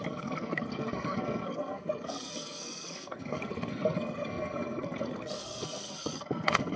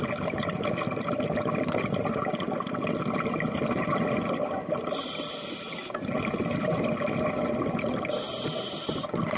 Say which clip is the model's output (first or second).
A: first